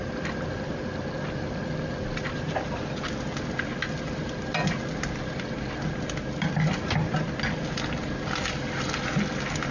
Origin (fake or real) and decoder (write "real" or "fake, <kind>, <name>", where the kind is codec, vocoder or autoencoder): real